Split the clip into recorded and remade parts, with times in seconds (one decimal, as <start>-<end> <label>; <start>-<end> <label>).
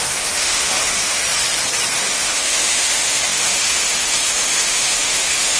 0.0-1.2 remade; 1.2-2.0 recorded; 2.0-5.6 remade